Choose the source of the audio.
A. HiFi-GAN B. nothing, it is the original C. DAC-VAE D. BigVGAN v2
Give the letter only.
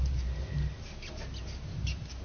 B